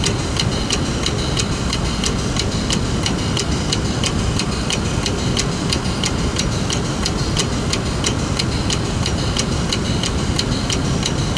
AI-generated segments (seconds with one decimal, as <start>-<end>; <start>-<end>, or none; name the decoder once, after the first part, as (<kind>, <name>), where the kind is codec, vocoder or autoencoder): 0.0-11.4 (vocoder, BigVGAN v2)